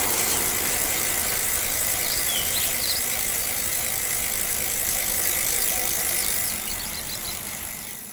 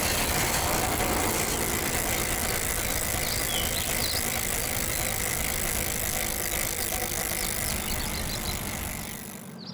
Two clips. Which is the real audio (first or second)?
second